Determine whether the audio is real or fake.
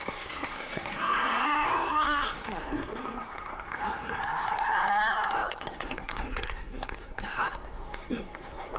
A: fake